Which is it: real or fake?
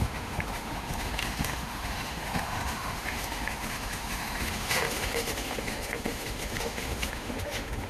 fake